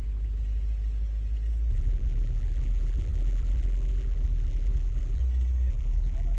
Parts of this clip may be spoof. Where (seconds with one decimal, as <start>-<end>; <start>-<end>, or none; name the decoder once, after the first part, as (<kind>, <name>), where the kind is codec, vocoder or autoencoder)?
1.7-5.2 (vocoder, BigVGAN v2); 5.7-6.4